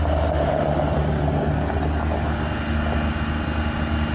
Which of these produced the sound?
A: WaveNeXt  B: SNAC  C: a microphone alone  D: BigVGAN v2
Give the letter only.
C